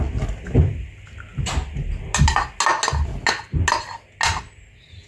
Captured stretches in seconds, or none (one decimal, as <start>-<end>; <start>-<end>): 0.0-5.1